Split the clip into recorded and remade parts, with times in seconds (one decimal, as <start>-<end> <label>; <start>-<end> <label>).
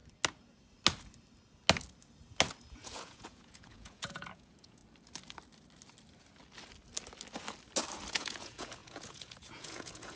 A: 0.0-2.7 recorded; 2.7-4.8 remade; 4.8-8.1 recorded; 8.1-10.2 remade